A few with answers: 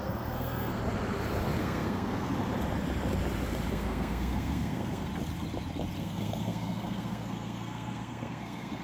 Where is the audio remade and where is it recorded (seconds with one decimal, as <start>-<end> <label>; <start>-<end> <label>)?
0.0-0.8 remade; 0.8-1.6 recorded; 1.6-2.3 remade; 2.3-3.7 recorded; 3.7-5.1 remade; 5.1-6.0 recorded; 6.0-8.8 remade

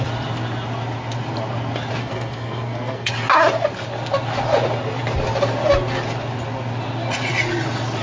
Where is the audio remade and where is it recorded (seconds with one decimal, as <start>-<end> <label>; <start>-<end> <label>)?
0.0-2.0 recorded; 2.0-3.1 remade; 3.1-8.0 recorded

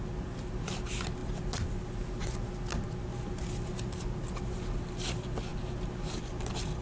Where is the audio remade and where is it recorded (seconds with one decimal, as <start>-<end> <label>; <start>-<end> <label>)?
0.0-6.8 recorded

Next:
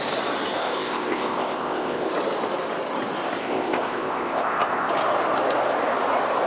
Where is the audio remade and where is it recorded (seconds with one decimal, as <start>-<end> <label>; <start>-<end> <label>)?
0.0-0.6 recorded; 0.6-2.1 remade; 2.1-3.4 recorded; 3.4-4.9 remade; 4.9-6.5 recorded